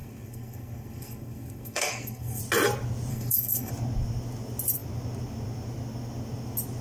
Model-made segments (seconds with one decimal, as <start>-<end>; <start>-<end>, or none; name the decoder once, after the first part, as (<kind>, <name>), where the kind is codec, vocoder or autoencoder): 0.0-2.4 (codec, SNAC); 3.1-3.7